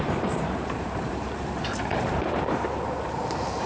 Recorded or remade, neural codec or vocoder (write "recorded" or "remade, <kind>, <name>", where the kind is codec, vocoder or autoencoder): remade, vocoder, BigVGAN v2